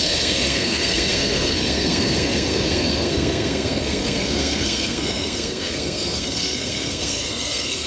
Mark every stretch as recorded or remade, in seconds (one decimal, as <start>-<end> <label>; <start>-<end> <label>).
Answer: 0.0-7.9 remade